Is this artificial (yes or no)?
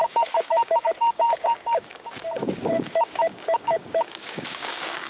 yes